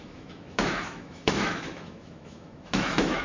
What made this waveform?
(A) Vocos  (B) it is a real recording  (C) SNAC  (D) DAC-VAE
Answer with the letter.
D